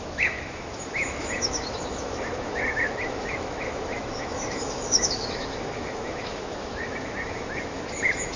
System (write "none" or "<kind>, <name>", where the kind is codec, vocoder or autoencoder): autoencoder, DAC-VAE